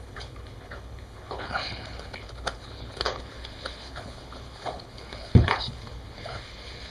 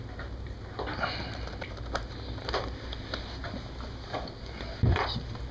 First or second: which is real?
second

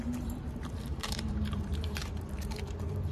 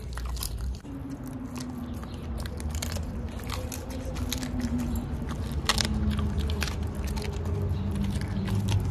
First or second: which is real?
second